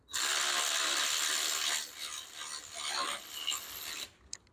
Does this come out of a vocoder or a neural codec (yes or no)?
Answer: no